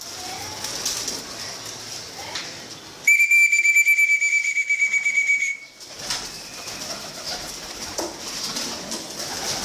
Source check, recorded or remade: recorded